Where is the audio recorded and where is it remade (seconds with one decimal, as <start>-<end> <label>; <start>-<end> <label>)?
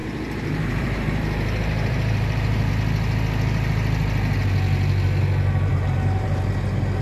0.0-2.7 remade; 2.7-5.7 recorded; 5.7-6.4 remade; 6.4-7.0 recorded